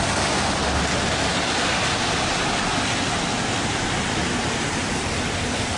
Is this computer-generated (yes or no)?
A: no